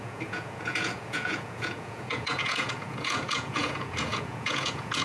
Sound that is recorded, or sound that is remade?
remade